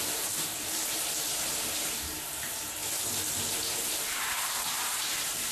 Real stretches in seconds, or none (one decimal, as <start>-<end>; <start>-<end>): 0.8-1.7; 2.8-3.9